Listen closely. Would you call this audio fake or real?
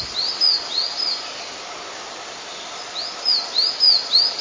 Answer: real